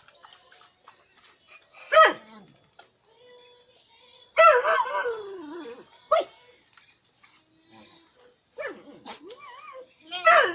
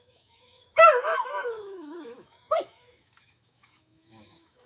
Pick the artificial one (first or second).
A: second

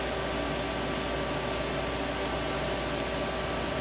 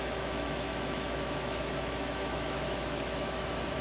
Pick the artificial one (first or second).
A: second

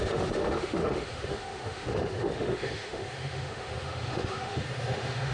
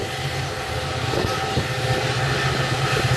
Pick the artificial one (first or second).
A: first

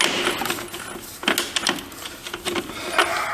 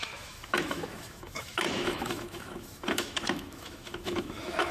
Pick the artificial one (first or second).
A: second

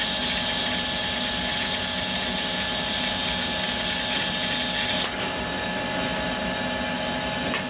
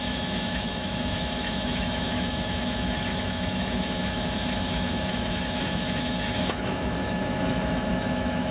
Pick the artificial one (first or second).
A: second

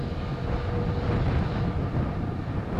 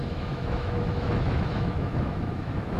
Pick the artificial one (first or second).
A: second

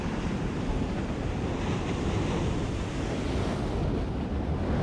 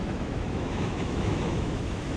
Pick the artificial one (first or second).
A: second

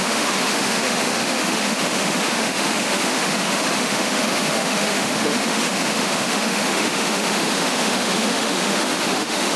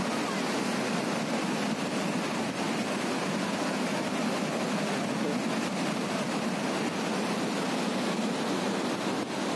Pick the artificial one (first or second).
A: first